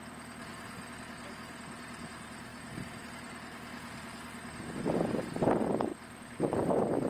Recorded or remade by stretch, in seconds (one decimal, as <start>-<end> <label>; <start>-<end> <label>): 0.0-2.5 recorded; 2.5-3.1 remade; 3.1-5.9 recorded; 5.9-6.4 remade; 6.4-7.1 recorded

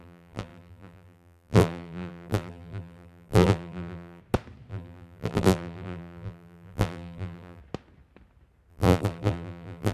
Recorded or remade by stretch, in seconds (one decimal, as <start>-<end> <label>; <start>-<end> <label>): 0.0-4.2 remade; 4.2-4.7 recorded; 4.7-7.6 remade; 7.6-8.7 recorded; 8.7-9.9 remade

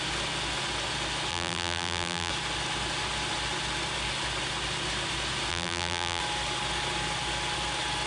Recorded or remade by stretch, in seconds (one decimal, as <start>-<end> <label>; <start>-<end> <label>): 0.0-1.3 recorded; 1.3-2.3 remade; 2.3-5.5 recorded; 5.5-6.2 remade; 6.2-8.1 recorded

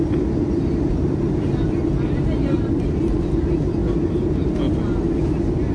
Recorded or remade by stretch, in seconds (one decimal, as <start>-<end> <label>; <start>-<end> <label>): 0.0-5.7 recorded

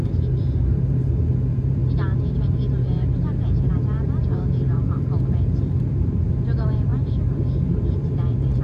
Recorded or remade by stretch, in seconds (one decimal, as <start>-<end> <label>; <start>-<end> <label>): 0.0-8.6 remade

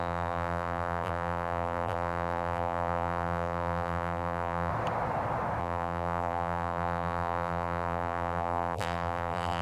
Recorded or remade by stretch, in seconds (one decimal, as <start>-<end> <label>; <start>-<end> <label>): 0.0-4.7 remade; 4.7-5.6 recorded; 5.6-9.6 remade

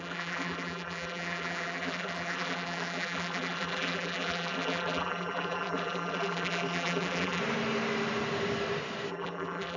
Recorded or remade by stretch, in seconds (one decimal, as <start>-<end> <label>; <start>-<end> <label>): 0.0-7.4 remade; 7.4-9.1 recorded; 9.1-9.8 remade